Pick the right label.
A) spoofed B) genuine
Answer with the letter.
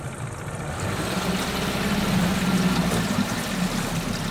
B